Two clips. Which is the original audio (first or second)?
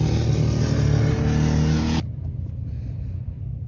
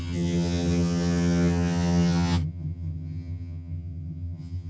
first